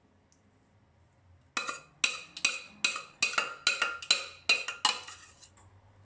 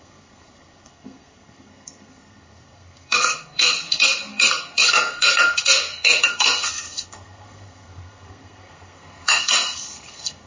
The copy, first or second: second